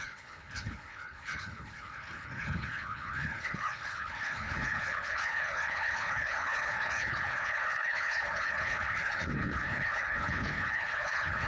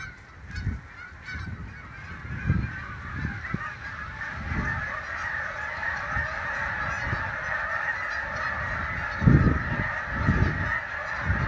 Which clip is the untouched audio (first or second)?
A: second